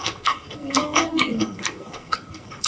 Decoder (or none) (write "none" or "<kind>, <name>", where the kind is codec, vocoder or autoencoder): codec, SNAC